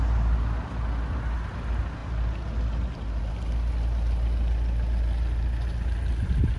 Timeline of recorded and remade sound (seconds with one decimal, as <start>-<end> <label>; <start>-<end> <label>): 0.0-6.6 recorded